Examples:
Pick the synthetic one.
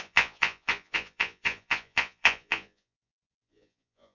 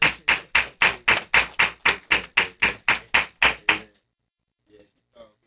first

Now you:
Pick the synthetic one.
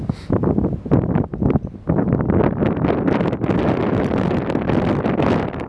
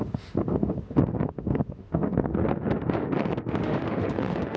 second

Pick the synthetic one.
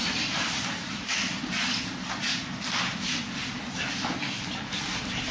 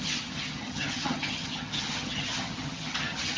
second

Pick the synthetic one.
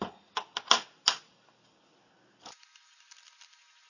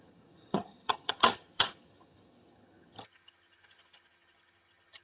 second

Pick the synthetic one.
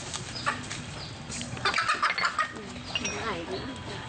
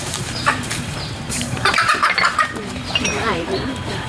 second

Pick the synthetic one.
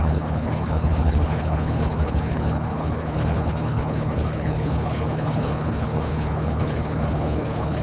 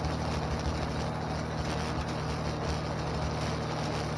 first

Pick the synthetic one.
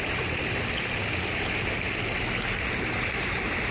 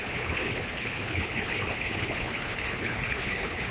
second